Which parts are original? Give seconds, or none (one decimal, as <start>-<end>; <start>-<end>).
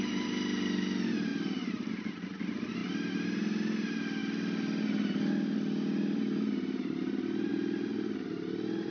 0.0-1.3; 1.9-8.9